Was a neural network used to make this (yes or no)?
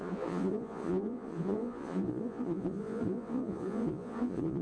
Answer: yes